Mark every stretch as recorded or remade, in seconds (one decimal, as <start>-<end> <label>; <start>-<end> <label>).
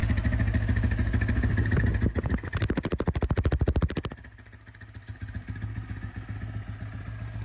0.0-7.4 recorded